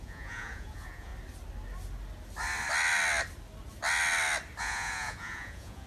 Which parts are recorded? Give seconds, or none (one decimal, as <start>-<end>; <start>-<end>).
1.1-4.6

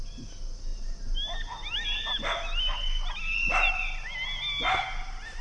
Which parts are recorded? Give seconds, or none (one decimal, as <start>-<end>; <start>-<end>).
0.0-5.4

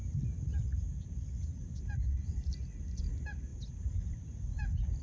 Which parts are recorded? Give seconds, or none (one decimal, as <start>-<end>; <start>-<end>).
0.0-5.0

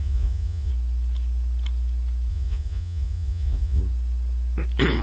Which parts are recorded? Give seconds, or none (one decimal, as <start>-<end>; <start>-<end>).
0.7-2.3; 3.8-5.0

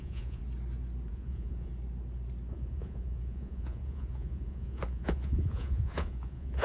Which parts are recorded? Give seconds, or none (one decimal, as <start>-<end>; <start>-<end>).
0.4-1.1; 1.7-2.5

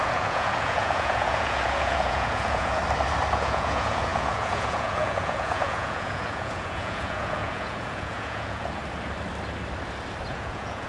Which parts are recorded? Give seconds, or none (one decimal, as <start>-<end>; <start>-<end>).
2.8-3.3; 8.8-10.3